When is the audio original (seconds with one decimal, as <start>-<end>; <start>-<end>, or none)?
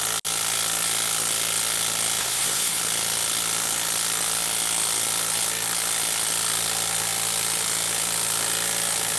0.0-2.2; 2.8-9.2